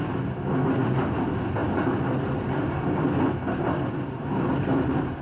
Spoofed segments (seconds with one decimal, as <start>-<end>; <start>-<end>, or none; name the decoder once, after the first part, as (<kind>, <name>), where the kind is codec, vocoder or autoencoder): none